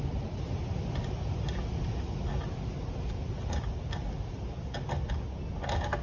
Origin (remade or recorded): recorded